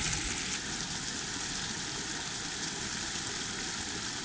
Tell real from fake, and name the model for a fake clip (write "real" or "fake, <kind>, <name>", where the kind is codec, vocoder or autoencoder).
real